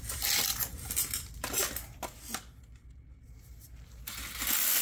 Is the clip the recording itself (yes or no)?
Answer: yes